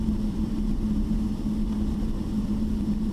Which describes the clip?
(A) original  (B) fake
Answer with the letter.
A